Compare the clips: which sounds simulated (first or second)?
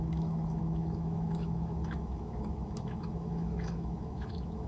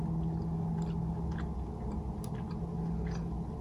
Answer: first